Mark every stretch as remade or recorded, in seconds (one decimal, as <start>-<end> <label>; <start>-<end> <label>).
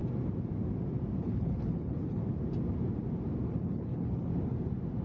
0.0-1.2 recorded; 1.2-2.2 remade; 2.2-3.6 recorded; 3.6-4.3 remade; 4.3-5.0 recorded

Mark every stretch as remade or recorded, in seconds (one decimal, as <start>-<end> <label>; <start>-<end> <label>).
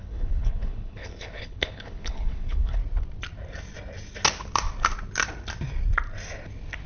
0.0-2.8 remade; 2.8-6.9 recorded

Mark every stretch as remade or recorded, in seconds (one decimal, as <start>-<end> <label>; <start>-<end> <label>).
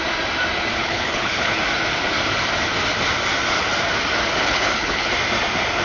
0.0-0.8 recorded; 0.8-1.6 remade; 1.6-4.4 recorded; 4.4-5.1 remade; 5.1-5.8 recorded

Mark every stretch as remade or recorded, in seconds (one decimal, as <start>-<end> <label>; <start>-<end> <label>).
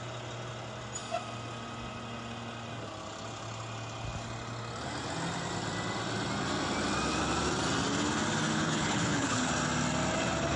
0.0-8.5 recorded; 8.5-9.5 remade; 9.5-10.6 recorded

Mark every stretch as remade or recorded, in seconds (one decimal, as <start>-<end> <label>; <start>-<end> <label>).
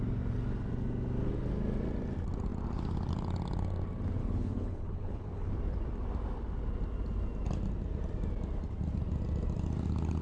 0.0-4.2 recorded; 4.2-5.5 remade; 5.5-10.2 recorded